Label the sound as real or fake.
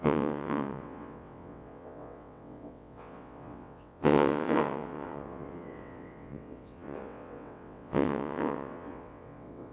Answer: fake